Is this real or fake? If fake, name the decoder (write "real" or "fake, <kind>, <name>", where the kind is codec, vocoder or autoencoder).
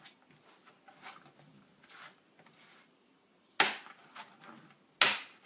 real